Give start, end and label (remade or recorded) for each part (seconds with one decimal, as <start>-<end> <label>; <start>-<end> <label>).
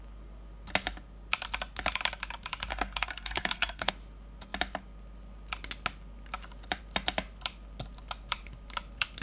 0.0-2.7 recorded; 2.7-3.9 remade; 3.9-9.2 recorded